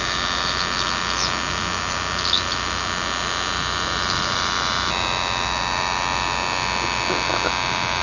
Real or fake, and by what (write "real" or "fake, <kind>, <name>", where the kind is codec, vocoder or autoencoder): real